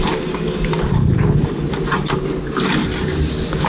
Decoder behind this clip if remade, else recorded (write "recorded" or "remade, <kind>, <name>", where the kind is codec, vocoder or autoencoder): recorded